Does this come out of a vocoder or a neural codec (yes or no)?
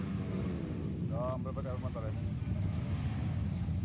no